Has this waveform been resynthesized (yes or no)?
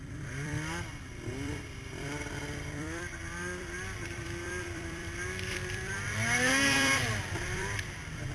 yes